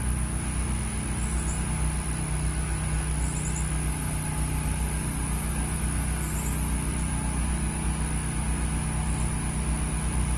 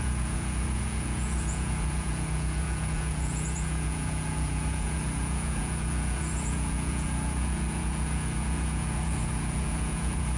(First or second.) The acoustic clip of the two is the first